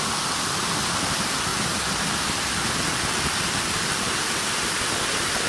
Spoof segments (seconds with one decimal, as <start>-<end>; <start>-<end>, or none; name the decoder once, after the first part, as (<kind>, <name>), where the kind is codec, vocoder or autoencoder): none